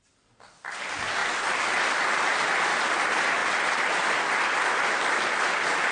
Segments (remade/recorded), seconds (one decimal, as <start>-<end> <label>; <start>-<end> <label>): 0.0-5.9 recorded